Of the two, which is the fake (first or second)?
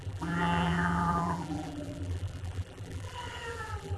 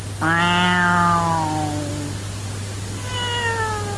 first